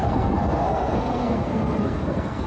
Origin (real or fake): fake